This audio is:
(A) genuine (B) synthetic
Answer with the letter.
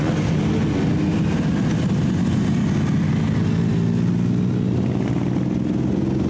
A